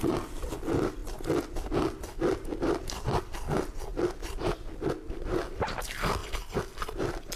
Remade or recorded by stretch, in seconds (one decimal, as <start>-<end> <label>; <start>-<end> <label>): 0.0-1.0 remade; 1.0-2.6 recorded; 2.6-3.9 remade; 3.9-4.7 recorded; 4.7-6.2 remade; 6.2-7.0 recorded; 7.0-7.4 remade